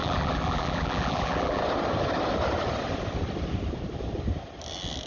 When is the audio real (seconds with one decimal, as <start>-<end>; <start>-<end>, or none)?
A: 1.6-5.1